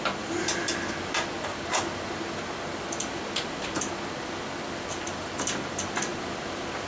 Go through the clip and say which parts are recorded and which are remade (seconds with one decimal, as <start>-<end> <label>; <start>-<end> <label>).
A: 0.0-6.9 recorded